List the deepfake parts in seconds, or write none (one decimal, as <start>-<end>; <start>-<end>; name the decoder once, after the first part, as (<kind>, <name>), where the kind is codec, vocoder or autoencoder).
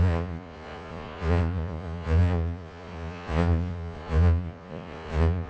0.0-5.5 (vocoder, Vocos)